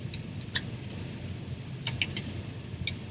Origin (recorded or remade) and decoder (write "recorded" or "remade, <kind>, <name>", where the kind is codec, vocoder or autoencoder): recorded